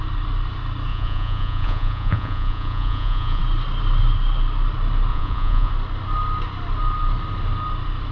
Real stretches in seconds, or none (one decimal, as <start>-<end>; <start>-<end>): 0.0-0.9; 3.4-5.1; 5.7-8.1